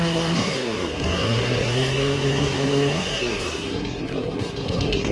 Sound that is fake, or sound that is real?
fake